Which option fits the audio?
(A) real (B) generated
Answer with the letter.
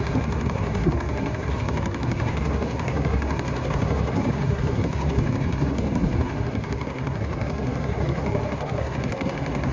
B